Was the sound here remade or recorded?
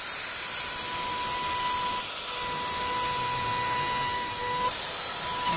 recorded